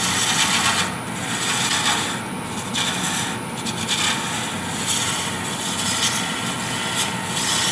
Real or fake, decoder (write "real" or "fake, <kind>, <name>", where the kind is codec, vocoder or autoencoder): real